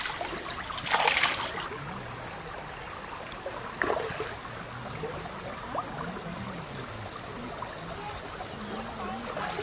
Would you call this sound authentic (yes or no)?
yes